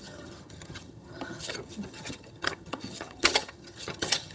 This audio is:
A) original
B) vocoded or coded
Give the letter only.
B